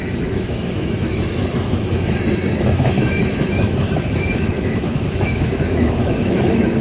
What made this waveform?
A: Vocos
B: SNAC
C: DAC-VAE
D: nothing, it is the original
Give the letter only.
C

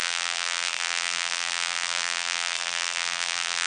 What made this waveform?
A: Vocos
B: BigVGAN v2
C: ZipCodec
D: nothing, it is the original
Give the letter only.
B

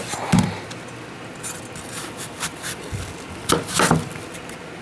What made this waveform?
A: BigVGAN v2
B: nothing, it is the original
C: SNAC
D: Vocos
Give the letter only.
B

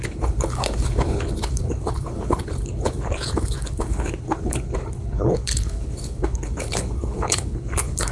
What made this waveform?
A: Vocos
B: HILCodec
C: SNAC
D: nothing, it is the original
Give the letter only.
B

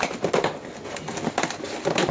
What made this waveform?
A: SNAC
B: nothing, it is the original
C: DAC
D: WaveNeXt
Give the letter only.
B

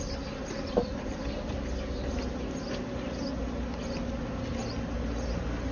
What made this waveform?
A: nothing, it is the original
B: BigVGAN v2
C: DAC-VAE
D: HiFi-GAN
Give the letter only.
A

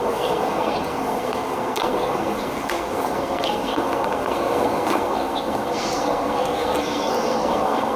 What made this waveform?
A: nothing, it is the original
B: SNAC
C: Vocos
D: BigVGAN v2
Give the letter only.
B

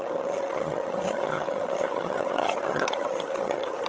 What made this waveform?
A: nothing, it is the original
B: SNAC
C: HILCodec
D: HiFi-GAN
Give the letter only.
D